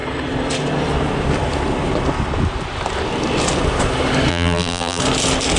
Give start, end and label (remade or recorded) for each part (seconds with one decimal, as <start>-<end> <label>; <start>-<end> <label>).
0.0-4.3 recorded; 4.3-5.0 remade; 5.0-5.6 recorded